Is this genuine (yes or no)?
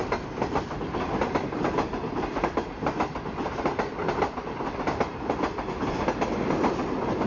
yes